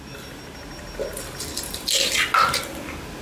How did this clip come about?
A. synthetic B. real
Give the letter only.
B